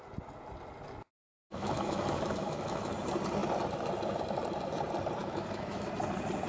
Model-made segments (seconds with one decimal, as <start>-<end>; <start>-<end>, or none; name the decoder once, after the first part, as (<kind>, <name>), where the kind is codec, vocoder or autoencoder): 1.2-2.9 (autoencoder, DAC-VAE); 5.2-5.9